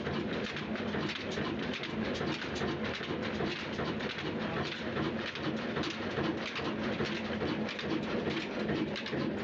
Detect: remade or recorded recorded